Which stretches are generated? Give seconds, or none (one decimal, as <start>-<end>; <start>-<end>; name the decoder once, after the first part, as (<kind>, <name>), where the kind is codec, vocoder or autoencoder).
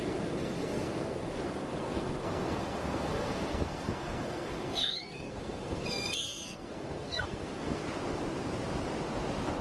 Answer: 0.0-7.8 (codec, SNAC)